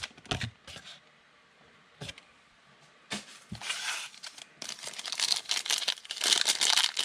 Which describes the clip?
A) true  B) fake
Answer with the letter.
A